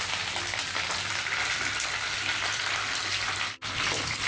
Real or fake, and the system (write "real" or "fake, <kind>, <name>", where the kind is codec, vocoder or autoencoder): real